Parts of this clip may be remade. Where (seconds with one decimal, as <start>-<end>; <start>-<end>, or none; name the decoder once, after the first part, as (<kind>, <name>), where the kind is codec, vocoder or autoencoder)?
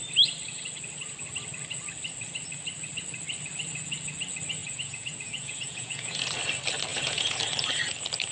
4.6-6.3 (vocoder, Vocos); 6.9-7.4